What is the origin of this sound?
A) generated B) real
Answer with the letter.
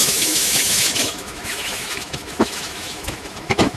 A